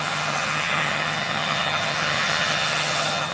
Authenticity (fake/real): fake